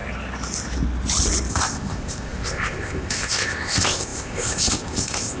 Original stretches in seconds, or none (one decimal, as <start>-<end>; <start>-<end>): 0.0-1.5